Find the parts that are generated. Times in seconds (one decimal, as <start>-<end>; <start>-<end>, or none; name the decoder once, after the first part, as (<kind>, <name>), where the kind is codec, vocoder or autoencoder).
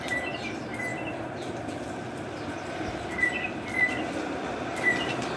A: 0.9-4.0 (vocoder, BigVGAN v2); 4.7-5.4